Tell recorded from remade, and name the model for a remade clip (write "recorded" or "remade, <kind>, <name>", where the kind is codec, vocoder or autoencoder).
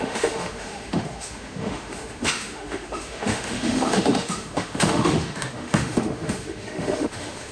remade, autoencoder, DAC-VAE